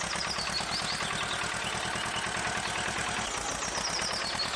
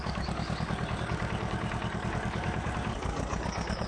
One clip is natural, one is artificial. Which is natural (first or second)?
first